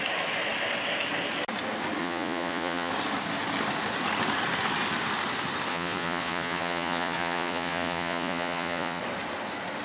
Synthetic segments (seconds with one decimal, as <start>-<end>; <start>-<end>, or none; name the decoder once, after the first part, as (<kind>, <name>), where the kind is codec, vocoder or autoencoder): 2.0-2.9 (vocoder, Vocos); 5.7-9.0